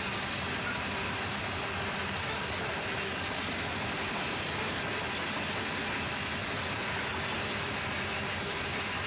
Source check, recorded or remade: recorded